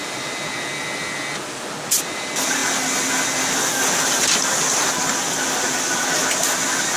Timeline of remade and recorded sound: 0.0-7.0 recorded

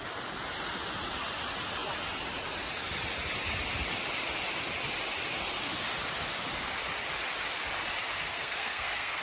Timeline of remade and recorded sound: 0.0-8.3 recorded; 8.3-9.2 remade

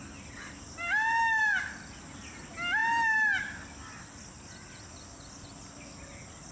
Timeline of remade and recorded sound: 0.0-6.5 recorded

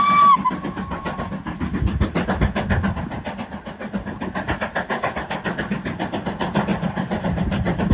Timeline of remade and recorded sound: 0.0-6.7 recorded; 6.7-7.9 remade

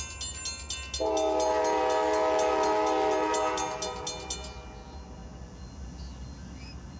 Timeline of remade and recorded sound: 0.0-7.0 recorded